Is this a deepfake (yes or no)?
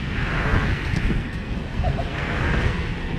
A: yes